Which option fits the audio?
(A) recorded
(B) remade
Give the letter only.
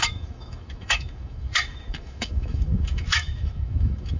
B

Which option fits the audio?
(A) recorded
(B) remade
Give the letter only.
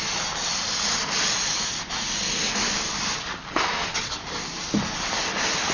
A